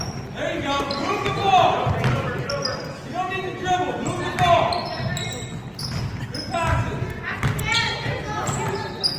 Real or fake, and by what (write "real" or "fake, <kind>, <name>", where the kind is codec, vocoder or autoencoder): real